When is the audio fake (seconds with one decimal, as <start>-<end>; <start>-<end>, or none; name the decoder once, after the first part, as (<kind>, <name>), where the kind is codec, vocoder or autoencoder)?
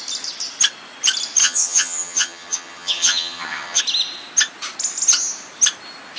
1.4-3.8 (vocoder, HiFi-GAN)